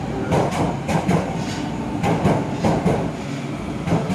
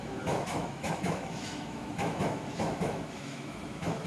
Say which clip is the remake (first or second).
second